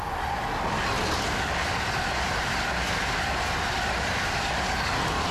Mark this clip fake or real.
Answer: real